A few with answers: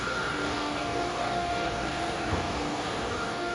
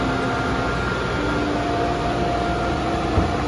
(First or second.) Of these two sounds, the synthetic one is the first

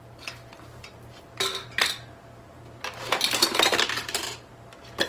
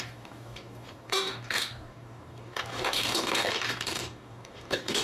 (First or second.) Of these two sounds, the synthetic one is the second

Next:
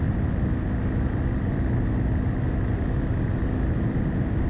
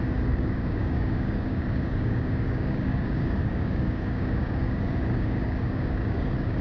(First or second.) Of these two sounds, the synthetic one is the second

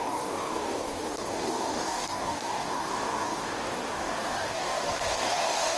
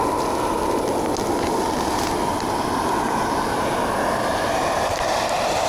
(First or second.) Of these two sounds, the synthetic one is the first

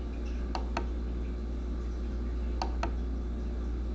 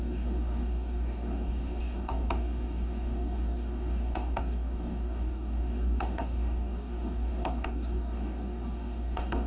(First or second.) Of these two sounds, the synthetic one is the second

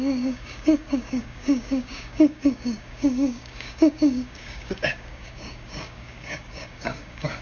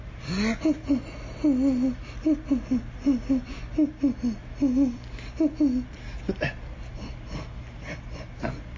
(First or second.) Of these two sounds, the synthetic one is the first